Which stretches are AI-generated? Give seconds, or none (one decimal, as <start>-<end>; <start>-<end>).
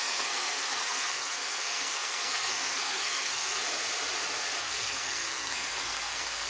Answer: 0.0-3.6; 4.6-6.5